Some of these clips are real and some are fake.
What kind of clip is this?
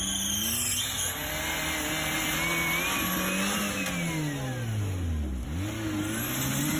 real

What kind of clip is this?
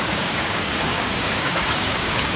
fake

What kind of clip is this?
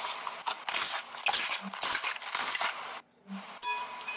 real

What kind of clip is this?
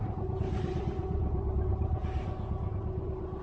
fake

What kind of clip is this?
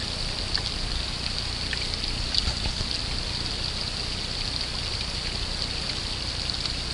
real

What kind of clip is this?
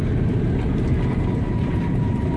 real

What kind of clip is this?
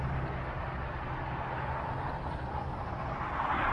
real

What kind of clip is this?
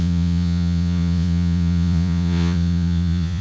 fake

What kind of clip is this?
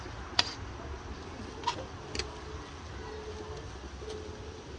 real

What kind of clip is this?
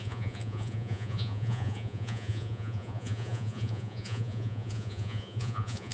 fake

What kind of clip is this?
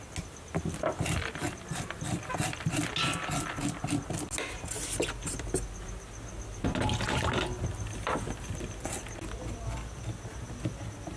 real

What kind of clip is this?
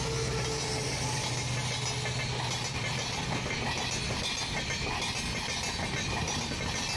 real